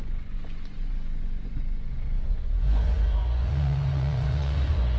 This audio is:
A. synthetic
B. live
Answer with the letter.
A